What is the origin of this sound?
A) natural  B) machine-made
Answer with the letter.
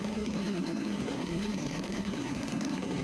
B